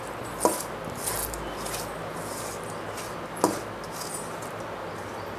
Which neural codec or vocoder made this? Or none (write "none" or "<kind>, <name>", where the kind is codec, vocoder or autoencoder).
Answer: none